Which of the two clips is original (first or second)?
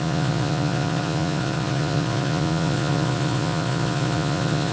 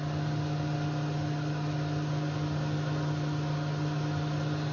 second